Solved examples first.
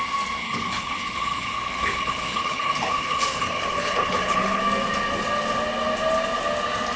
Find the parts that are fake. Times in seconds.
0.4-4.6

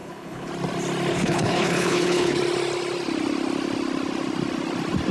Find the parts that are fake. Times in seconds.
0.0-0.5; 1.1-2.4

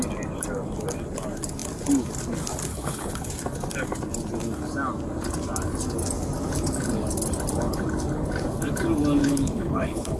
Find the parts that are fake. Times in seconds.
2.7-3.3; 9.2-10.2

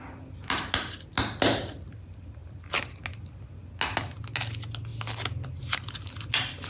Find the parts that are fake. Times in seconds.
none

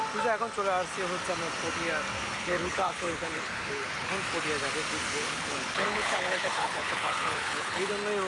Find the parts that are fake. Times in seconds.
2.3-4.1; 5.0-7.9

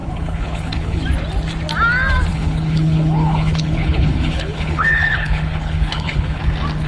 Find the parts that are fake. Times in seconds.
0.0-1.0; 2.3-6.4

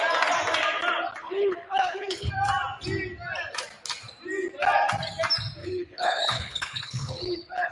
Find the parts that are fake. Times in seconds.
1.2-2.3; 5.6-7.7

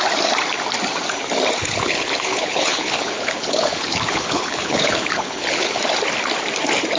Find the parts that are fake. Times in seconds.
1.6-5.8